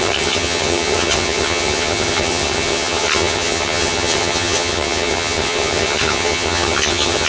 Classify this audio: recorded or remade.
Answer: remade